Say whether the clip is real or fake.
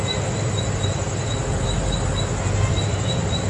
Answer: real